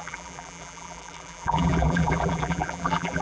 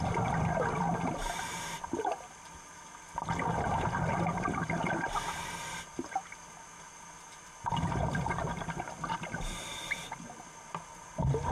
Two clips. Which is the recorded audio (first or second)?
second